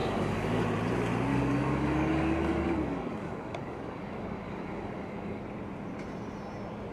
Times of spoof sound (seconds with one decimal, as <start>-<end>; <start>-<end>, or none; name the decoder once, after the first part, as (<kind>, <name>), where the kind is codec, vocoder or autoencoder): 0.0-0.6 (codec, DAC); 1.3-5.4